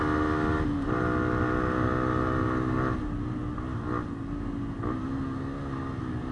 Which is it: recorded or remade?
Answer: recorded